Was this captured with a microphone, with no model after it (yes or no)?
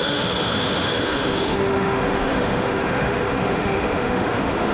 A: no